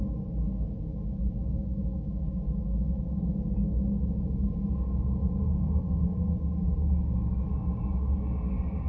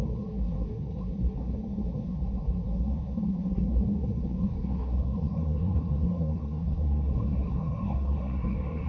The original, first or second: first